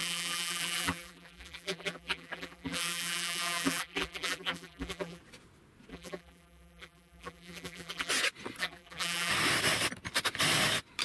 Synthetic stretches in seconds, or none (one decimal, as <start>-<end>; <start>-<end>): 0.0-5.2; 5.9-8.1; 8.6-9.3